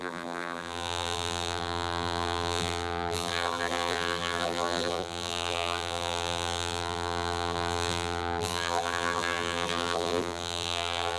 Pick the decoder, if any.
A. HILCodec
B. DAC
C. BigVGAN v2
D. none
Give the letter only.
C